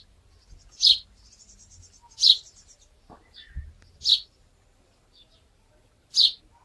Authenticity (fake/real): real